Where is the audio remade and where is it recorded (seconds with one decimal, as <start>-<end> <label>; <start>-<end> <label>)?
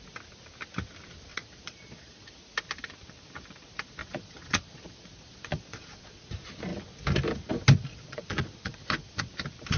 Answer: 0.0-1.3 recorded; 1.3-2.3 remade; 2.3-4.0 recorded; 4.0-6.3 remade; 6.3-7.9 recorded; 7.9-9.3 remade; 9.3-9.8 recorded